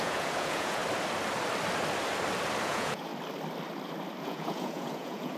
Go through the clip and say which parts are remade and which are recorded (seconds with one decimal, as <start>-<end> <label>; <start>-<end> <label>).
0.0-0.8 remade; 0.8-2.6 recorded; 2.6-3.1 remade; 3.1-4.2 recorded; 4.2-5.4 remade